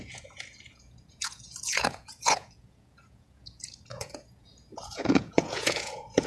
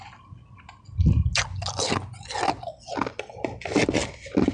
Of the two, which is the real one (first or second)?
second